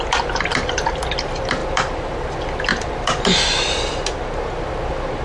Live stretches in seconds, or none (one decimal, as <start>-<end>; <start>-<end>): 0.0-5.2